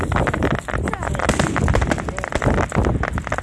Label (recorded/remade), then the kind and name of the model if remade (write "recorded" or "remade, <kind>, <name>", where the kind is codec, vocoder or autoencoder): recorded